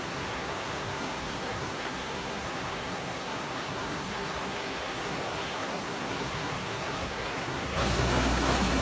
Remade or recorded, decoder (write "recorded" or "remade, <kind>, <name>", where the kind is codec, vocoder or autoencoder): remade, codec, SNAC